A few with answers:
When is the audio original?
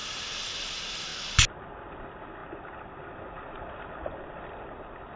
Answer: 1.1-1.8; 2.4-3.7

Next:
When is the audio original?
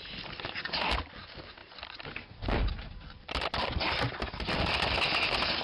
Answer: 0.6-1.6; 4.7-5.6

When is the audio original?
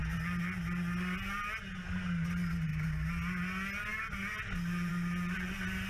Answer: 0.0-5.9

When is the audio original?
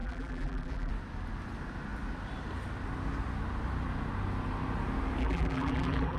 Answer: 0.9-5.2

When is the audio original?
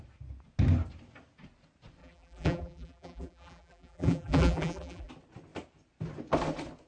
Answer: 0.0-2.0; 5.1-6.9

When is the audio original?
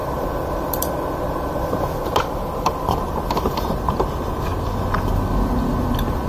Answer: 3.8-6.3